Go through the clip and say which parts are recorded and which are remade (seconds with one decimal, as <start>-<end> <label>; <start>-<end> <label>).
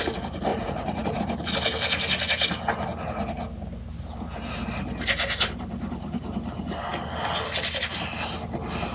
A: 0.0-0.5 recorded; 0.5-1.2 remade; 1.2-8.9 recorded